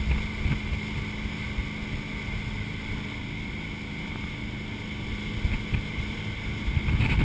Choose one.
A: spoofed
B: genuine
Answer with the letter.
B